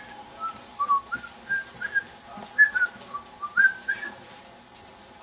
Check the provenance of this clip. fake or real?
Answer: real